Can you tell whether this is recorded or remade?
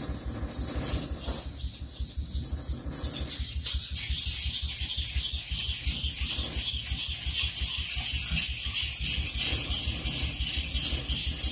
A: recorded